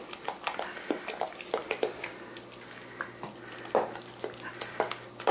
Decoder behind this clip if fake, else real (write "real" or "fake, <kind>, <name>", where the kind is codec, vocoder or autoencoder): real